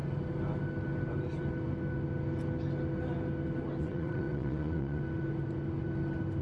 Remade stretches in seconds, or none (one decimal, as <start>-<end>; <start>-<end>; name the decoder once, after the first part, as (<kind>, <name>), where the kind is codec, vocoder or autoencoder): 3.8-5.0 (vocoder, Vocos)